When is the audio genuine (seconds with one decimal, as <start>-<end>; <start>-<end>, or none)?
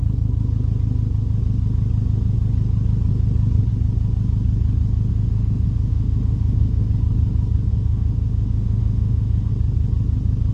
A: 0.0-5.1; 6.9-7.7; 9.5-10.5